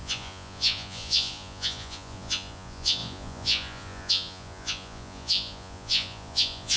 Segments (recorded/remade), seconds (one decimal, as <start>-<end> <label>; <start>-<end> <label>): 0.0-6.8 remade